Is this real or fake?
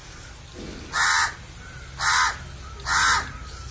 real